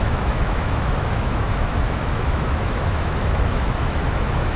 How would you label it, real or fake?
fake